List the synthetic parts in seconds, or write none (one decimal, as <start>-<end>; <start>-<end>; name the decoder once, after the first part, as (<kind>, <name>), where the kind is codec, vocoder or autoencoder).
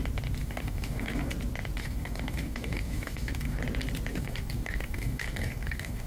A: 0.4-1.3 (codec, DAC); 1.8-3.6; 4.1-6.1